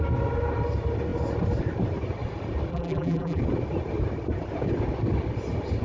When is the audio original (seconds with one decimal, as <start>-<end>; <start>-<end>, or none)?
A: 0.0-2.7; 3.4-5.8